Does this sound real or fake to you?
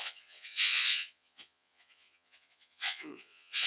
fake